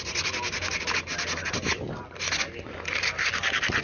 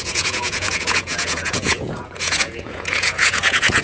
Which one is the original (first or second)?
first